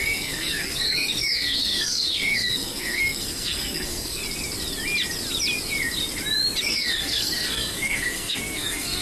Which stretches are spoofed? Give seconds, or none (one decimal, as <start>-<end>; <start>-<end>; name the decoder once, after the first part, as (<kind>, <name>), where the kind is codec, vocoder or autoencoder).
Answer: 0.0-4.2 (codec, SNAC); 6.6-9.0